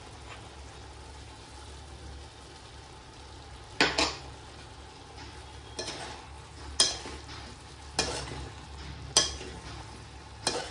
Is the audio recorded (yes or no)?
yes